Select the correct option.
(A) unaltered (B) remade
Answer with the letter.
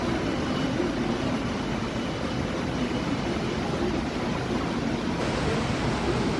A